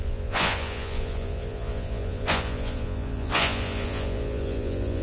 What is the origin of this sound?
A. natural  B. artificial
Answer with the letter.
B